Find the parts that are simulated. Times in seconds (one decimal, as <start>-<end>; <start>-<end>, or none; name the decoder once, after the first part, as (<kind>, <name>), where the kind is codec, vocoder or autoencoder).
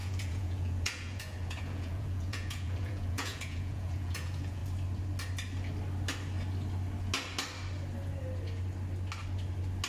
0.0-4.6 (vocoder, Vocos)